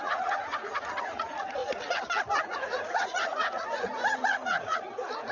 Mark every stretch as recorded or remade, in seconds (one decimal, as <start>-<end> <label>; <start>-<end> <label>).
0.0-1.6 remade; 1.6-2.4 recorded; 2.4-5.3 remade